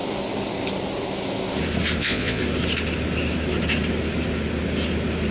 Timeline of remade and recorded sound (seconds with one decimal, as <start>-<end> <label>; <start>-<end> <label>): 0.0-2.0 recorded; 2.0-2.4 remade; 2.4-5.3 recorded